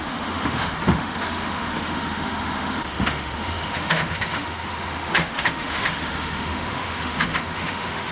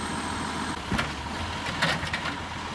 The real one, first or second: second